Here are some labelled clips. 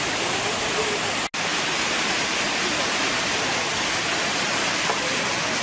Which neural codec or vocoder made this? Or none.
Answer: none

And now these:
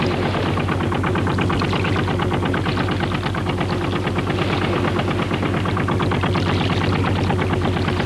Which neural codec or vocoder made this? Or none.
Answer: none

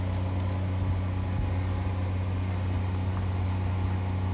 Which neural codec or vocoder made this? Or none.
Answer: none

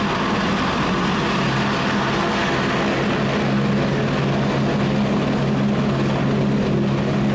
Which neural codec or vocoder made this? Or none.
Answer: none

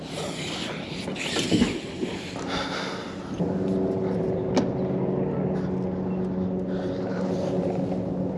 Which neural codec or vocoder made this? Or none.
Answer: none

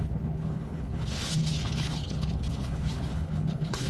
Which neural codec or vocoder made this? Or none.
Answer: codec, HILCodec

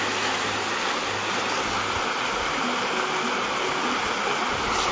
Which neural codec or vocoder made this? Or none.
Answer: none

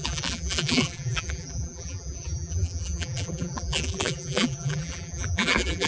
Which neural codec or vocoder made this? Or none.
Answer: vocoder, BigVGAN v2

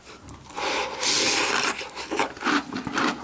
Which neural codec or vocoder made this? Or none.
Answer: none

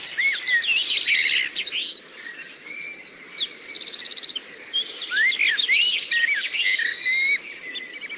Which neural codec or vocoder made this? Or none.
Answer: none